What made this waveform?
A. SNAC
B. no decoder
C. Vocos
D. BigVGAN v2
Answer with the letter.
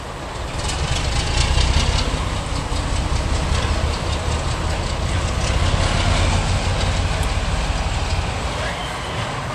B